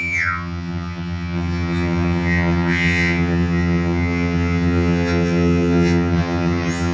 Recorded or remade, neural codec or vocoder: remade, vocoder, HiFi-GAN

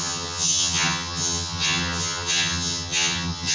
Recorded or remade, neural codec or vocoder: remade, vocoder, HiFi-GAN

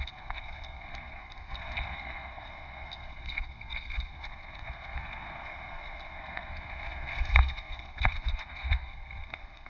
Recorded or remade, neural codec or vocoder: remade, codec, SNAC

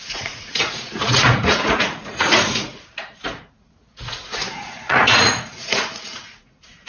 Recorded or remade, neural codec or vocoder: remade, vocoder, Vocos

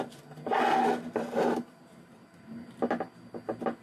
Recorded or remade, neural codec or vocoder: recorded